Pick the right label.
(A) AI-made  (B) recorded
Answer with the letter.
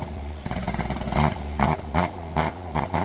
A